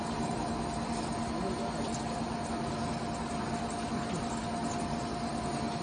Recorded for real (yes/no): yes